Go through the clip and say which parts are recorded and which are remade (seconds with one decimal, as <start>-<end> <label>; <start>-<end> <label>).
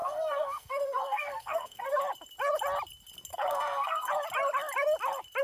0.0-2.0 remade; 2.0-3.3 recorded; 3.3-4.1 remade; 4.1-5.4 recorded